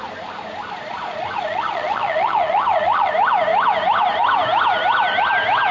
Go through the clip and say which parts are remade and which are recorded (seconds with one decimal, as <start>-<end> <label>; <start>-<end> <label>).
0.0-0.8 recorded; 0.8-3.1 remade; 3.1-5.7 recorded